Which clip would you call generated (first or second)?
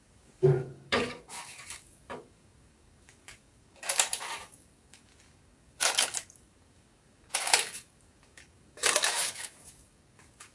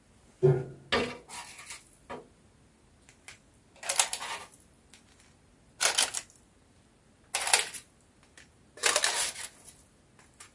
first